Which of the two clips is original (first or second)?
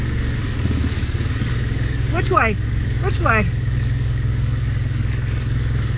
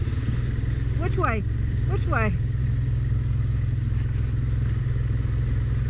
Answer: second